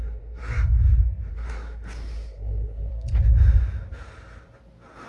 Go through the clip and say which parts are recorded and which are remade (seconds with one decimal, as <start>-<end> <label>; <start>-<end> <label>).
0.0-0.4 remade; 0.4-1.3 recorded; 1.3-2.9 remade; 2.9-5.1 recorded